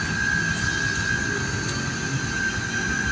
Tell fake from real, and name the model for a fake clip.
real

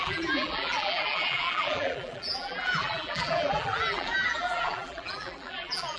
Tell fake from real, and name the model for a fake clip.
fake, vocoder, BigVGAN v2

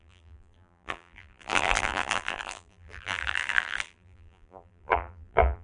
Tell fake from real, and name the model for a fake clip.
fake, vocoder, BigVGAN v2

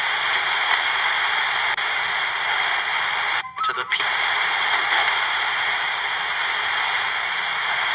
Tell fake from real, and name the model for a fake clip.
fake, vocoder, BigVGAN v2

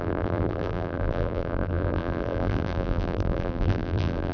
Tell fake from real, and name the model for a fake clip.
fake, vocoder, BigVGAN v2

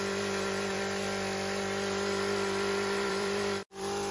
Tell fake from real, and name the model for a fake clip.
fake, vocoder, BigVGAN v2